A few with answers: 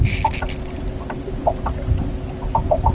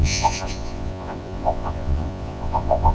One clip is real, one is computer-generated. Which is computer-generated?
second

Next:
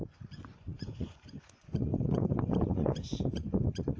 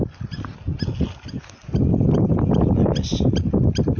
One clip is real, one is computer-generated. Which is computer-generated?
first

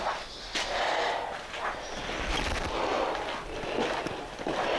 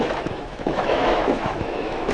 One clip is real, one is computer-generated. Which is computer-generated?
second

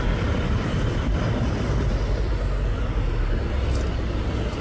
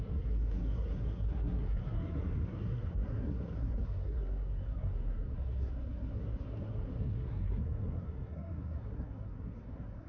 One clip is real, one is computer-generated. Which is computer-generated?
second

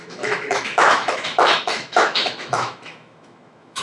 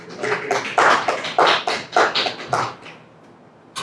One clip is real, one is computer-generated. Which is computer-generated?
first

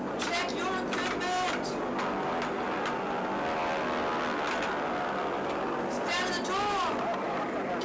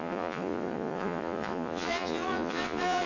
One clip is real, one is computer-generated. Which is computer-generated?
second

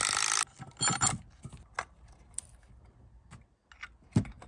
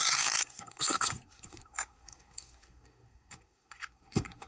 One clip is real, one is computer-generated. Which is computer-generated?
second